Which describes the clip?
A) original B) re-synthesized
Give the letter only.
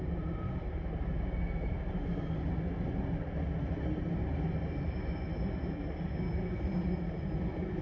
A